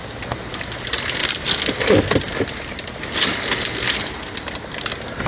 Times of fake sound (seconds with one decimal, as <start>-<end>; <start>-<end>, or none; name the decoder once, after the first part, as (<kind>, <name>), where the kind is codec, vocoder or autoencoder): none